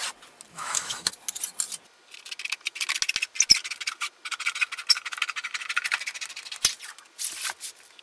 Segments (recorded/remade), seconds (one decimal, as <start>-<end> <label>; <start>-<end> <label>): 0.0-0.5 recorded; 0.5-1.1 remade; 1.1-8.0 recorded